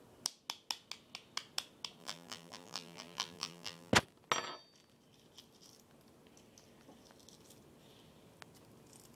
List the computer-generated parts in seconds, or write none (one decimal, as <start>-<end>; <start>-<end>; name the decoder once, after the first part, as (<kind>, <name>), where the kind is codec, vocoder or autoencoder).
2.0-3.9 (vocoder, BigVGAN v2)